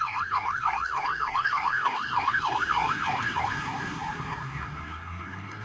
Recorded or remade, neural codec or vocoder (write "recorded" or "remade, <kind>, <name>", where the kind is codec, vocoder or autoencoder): remade, codec, SNAC